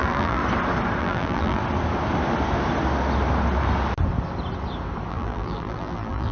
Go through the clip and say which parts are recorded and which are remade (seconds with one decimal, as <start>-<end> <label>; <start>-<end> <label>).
0.0-0.4 remade; 0.4-1.0 recorded; 1.0-1.6 remade; 1.6-5.1 recorded; 5.1-6.3 remade